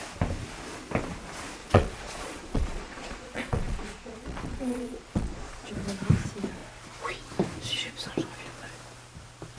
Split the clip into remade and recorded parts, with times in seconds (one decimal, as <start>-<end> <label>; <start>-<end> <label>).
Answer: 0.0-1.6 recorded; 1.6-5.7 remade; 5.7-9.6 recorded